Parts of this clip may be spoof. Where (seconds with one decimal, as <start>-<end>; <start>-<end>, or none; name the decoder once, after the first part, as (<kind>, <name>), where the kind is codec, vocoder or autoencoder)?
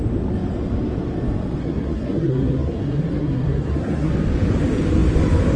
1.6-4.1 (codec, SNAC)